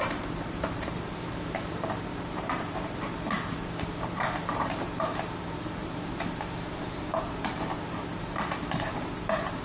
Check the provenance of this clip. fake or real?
fake